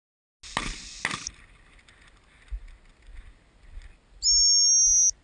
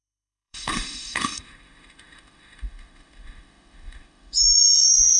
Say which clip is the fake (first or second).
second